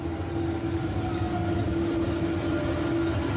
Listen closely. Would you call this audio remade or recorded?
recorded